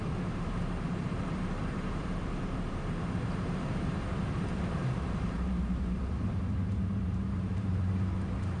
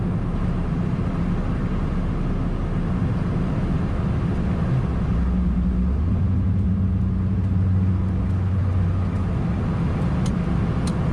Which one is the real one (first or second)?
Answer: second